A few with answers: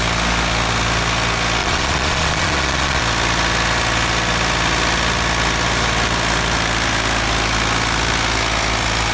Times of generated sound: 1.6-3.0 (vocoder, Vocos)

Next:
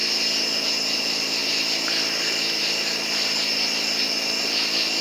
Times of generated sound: 0.9-1.4 (vocoder, BigVGAN v2); 4.4-5.0